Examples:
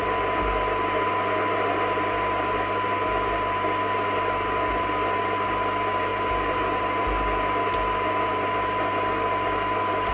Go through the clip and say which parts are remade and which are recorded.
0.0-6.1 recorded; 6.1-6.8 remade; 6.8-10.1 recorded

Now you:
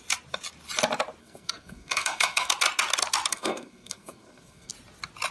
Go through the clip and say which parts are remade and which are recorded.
0.0-1.2 recorded; 1.2-2.5 remade; 2.5-3.3 recorded; 3.3-4.7 remade; 4.7-5.3 recorded

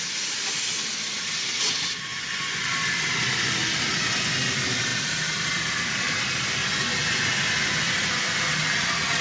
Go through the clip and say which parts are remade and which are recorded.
0.0-2.1 recorded; 2.1-2.6 remade; 2.6-3.9 recorded; 3.9-4.4 remade; 4.4-6.6 recorded; 6.6-8.5 remade; 8.5-9.2 recorded